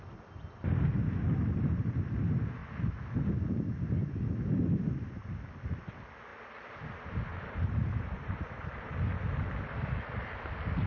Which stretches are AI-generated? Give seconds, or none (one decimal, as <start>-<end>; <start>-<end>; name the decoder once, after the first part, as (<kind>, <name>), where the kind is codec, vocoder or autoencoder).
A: 7.3-8.9 (vocoder, BigVGAN v2)